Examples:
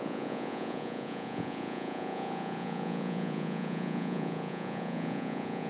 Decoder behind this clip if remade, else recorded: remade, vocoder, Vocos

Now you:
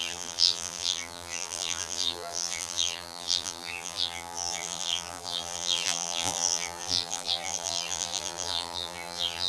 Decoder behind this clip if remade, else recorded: remade, vocoder, BigVGAN v2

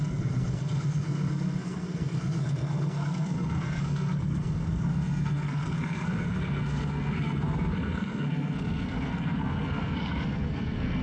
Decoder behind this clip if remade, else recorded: remade, codec, SNAC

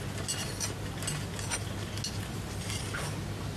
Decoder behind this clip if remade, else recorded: recorded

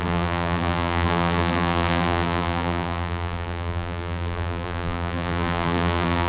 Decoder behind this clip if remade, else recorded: remade, vocoder, BigVGAN v2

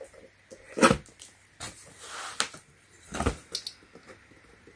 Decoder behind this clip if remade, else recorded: recorded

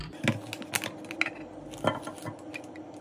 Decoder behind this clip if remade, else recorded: recorded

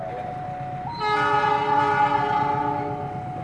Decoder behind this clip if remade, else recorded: recorded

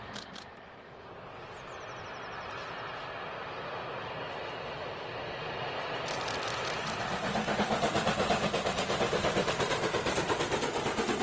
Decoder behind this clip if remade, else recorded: recorded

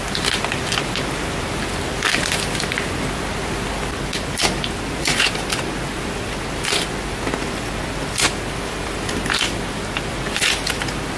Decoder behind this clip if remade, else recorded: recorded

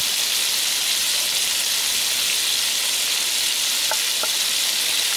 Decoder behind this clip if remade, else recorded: recorded